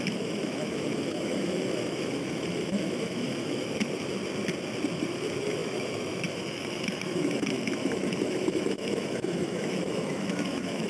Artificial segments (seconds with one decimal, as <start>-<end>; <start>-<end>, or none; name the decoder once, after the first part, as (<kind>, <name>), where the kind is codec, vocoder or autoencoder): 0.0-4.2 (autoencoder, DAC-VAE); 5.1-10.9